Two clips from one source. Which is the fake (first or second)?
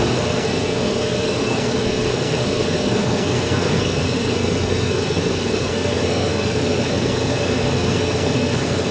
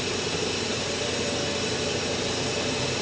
first